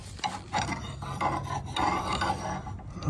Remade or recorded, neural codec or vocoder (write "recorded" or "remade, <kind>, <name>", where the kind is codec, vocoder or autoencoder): recorded